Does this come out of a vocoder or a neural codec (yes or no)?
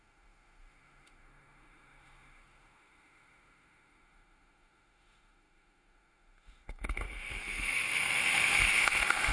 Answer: yes